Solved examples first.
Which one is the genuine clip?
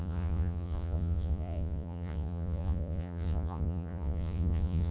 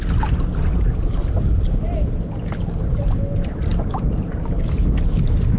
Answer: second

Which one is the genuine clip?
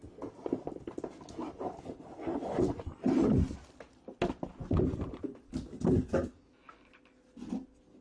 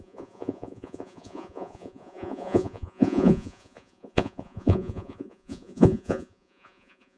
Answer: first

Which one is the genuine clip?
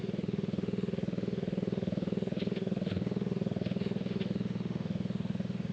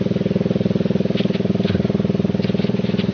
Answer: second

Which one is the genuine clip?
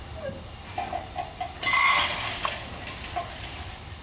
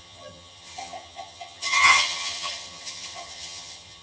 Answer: first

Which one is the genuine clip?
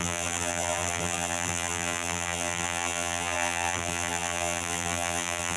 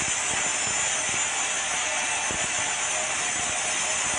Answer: second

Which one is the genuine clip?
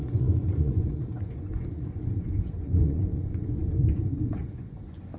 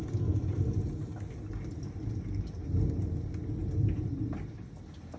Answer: second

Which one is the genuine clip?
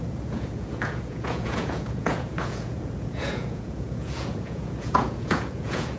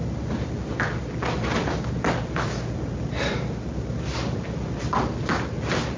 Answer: second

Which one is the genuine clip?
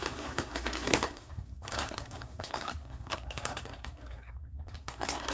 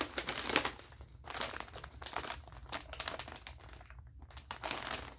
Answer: second